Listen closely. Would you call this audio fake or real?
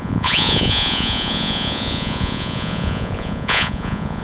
fake